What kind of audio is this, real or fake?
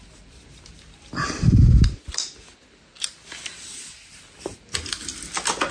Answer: real